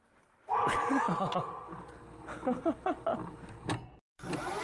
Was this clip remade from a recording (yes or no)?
yes